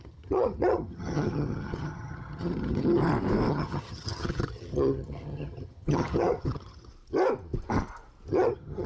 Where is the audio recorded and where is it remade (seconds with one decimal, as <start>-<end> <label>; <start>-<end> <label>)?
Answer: 0.0-3.0 remade; 3.0-3.5 recorded; 3.5-6.9 remade; 6.9-8.3 recorded; 8.3-8.9 remade